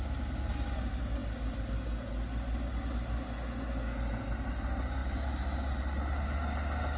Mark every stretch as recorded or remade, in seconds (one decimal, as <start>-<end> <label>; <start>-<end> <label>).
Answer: 0.0-7.0 recorded